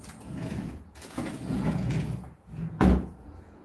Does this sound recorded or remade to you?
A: remade